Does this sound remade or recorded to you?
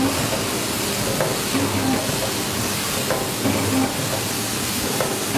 recorded